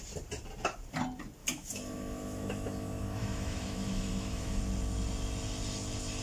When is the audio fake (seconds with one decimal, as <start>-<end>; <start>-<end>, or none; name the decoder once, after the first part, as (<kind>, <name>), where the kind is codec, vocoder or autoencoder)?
1.4-4.6 (autoencoder, DAC-VAE)